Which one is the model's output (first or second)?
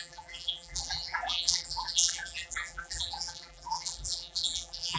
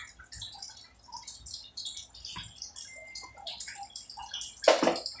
first